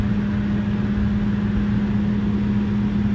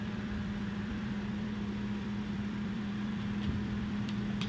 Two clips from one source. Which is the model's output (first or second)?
second